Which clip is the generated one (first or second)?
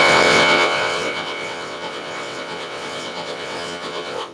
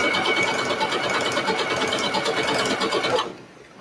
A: first